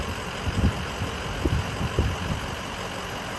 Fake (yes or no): no